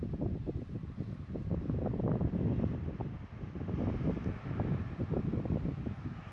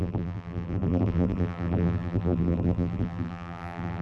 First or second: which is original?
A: first